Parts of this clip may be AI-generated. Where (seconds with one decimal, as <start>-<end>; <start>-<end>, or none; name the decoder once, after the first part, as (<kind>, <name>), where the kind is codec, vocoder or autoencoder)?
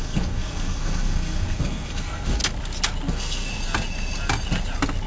0.0-2.4 (codec, SNAC); 3.1-3.5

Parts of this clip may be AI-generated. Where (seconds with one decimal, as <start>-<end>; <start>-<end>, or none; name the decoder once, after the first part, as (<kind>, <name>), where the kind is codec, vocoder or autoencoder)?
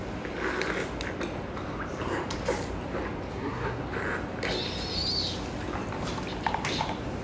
3.3-3.8 (codec, SNAC)